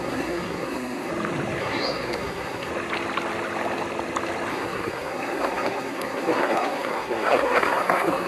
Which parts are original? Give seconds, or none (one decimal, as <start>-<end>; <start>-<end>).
1.1-1.6; 2.7-4.5